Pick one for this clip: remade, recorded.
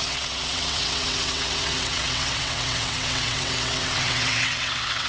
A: remade